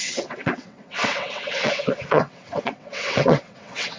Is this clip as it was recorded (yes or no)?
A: no